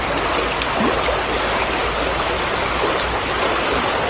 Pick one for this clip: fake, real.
real